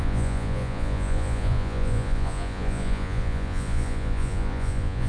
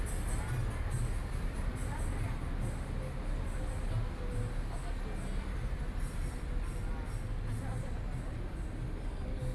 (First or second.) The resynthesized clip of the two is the first